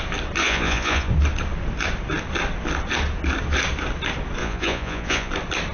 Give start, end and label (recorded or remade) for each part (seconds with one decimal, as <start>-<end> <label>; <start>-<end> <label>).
0.0-0.4 recorded; 0.4-1.1 remade; 1.1-4.4 recorded; 4.4-5.3 remade; 5.3-5.7 recorded